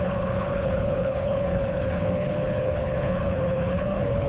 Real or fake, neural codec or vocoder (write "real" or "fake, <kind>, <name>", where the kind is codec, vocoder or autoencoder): fake, codec, HILCodec